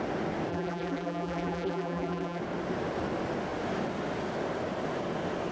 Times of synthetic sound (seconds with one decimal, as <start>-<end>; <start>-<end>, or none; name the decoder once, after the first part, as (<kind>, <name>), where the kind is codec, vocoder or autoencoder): 0.5-2.4 (vocoder, BigVGAN v2)